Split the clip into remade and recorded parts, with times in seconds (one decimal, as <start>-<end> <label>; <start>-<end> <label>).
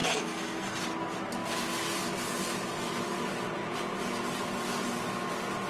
0.0-0.8 remade; 0.8-5.7 recorded